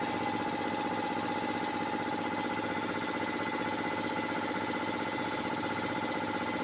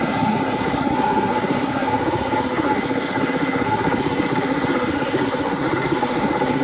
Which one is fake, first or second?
second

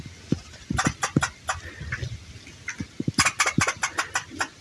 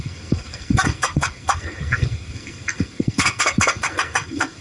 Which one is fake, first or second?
second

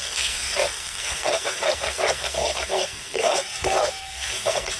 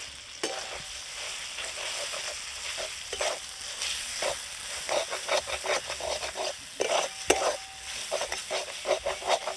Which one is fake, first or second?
first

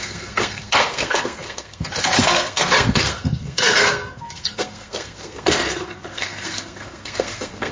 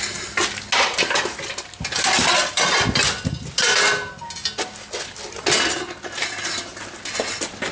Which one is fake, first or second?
first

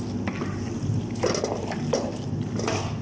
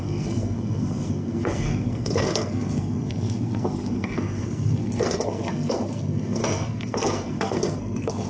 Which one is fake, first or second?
second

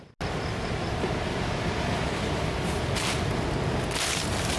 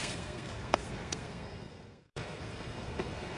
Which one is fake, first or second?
second